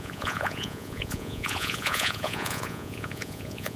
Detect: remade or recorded remade